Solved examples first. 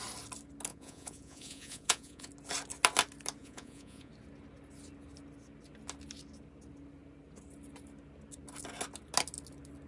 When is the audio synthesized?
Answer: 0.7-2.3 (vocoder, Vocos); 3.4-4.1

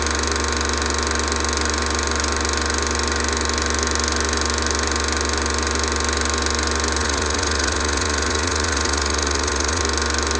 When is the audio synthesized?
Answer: 7.0-9.8 (vocoder, Vocos)

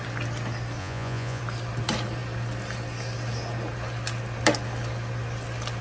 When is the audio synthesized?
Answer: 0.8-1.4 (vocoder, Vocos)

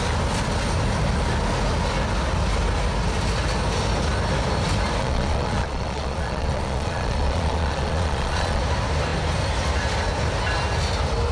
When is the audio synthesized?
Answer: 5.0-8.6 (vocoder, Vocos)

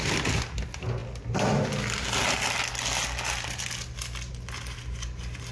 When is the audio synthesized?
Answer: none

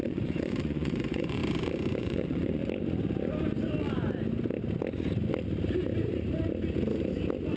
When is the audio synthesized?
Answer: 0.0-1.4 (vocoder, Vocos); 2.0-2.6

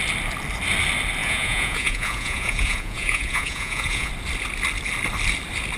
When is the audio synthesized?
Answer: 1.2-4.1 (vocoder, Vocos)

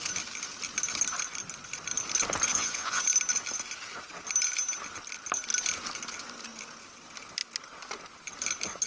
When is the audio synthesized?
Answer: 2.5-3.0 (vocoder, Vocos)